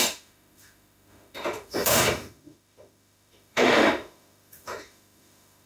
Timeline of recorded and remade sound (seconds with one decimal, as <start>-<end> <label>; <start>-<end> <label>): 0.0-5.7 remade